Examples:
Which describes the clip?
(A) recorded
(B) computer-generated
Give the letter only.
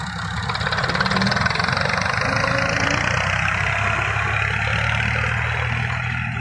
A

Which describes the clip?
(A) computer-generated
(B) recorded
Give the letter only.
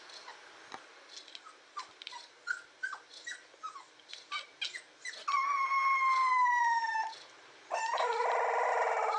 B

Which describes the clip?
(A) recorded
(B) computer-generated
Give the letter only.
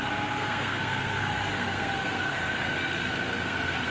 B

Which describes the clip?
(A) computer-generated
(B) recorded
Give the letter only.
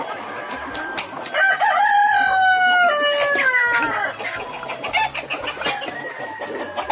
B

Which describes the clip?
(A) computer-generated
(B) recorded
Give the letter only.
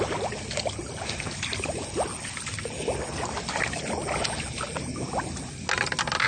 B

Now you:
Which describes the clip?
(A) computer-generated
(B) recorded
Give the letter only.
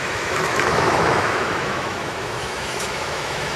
A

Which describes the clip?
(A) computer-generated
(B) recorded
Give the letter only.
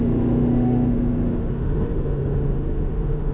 A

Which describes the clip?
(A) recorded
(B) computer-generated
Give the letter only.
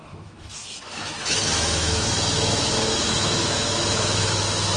B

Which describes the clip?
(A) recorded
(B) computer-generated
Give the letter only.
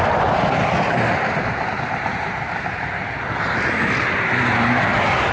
A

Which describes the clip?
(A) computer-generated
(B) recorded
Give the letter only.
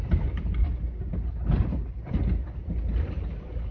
B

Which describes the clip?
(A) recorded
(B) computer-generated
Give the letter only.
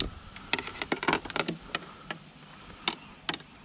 A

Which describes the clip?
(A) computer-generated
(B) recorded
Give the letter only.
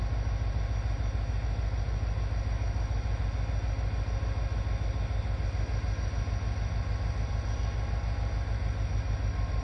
B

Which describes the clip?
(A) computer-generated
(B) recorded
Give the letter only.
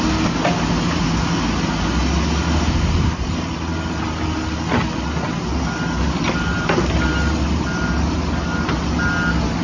B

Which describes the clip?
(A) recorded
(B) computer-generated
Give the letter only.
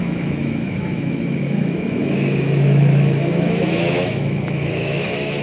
B